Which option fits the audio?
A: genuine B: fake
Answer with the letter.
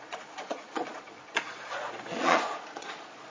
B